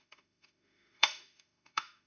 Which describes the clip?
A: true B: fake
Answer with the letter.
B